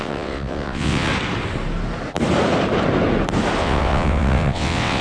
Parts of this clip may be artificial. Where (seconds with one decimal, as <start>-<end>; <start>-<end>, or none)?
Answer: 0.0-1.1; 3.6-5.0